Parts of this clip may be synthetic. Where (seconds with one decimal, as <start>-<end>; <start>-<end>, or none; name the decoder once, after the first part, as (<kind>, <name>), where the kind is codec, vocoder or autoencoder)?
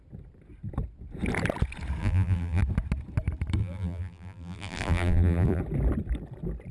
2.0-2.6 (vocoder, BigVGAN v2); 3.6-5.6